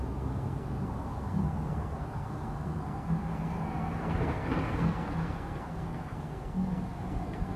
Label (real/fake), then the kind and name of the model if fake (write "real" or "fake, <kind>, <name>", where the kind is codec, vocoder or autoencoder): fake, codec, SNAC